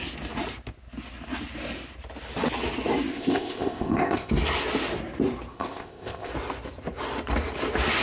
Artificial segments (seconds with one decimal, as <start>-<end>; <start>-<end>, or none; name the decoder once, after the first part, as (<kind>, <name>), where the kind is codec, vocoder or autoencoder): 3.1-4.3 (codec, ZipCodec); 5.5-6.3